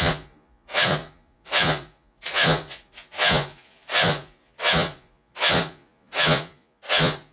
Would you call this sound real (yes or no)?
no